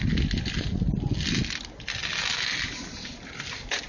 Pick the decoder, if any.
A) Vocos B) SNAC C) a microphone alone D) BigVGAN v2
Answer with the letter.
C